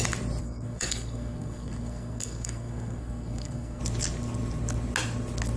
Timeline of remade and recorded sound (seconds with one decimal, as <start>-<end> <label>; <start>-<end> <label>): 0.0-0.4 recorded; 0.4-3.8 remade; 3.8-5.6 recorded